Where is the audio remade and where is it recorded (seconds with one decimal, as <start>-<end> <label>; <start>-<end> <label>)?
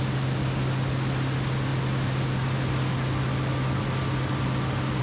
0.0-5.0 recorded